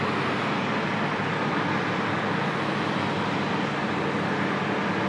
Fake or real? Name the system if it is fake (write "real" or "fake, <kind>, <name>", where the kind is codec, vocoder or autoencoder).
real